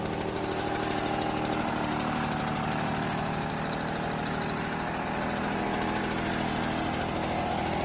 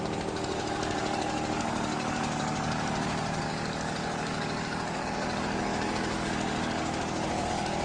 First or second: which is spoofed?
second